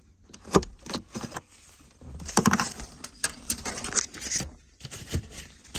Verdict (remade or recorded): recorded